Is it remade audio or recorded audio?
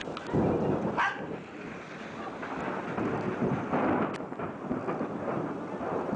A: recorded